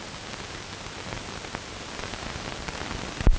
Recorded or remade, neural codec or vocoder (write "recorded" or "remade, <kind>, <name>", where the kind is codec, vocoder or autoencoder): recorded